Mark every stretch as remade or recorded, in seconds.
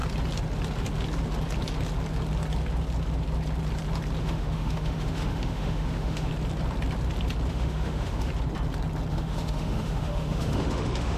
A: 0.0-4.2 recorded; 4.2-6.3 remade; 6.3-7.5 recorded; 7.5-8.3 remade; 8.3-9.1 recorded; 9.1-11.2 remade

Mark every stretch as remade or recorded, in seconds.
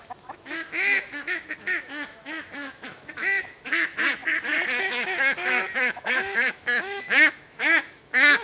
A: 0.0-4.2 remade; 4.2-4.8 recorded; 4.8-8.4 remade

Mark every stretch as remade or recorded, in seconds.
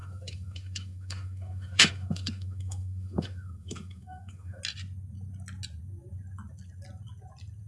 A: 0.0-4.6 remade; 4.6-7.7 recorded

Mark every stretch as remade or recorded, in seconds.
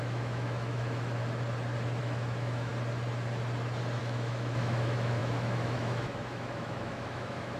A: 0.0-1.2 remade; 1.2-2.0 recorded; 2.0-2.7 remade; 2.7-4.0 recorded; 4.0-7.6 remade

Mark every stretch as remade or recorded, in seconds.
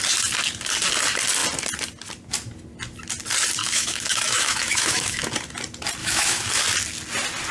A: 0.0-3.6 recorded; 3.6-5.2 remade; 5.2-6.0 recorded; 6.0-6.6 remade; 6.6-7.5 recorded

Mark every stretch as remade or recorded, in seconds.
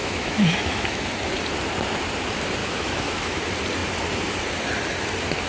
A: 0.0-1.0 remade; 1.0-2.6 recorded; 2.6-3.4 remade; 3.4-5.5 recorded